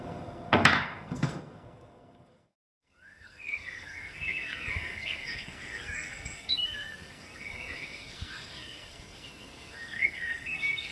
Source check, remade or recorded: remade